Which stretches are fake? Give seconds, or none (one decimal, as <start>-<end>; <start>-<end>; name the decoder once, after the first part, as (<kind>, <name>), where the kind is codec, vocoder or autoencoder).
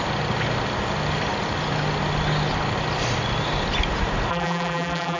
4.3-5.2 (vocoder, BigVGAN v2)